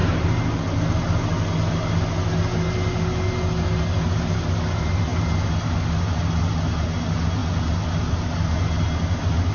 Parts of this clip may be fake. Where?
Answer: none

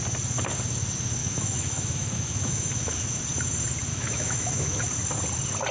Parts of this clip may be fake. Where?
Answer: 1.2-3.2; 3.9-4.8

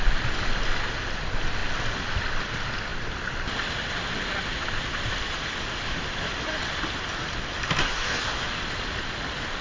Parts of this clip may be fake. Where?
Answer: 7.8-8.6

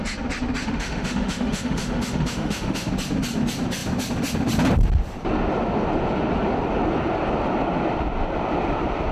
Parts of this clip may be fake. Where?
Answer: 0.6-2.9

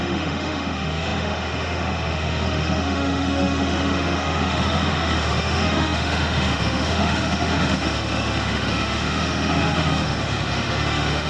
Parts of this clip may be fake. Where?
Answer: 0.0-11.3

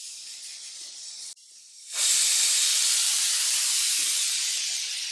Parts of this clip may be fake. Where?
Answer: 0.0-0.5; 1.6-5.1